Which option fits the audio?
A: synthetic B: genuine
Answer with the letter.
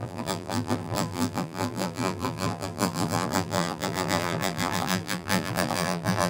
A